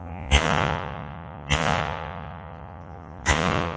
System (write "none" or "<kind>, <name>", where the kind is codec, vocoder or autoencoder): vocoder, Vocos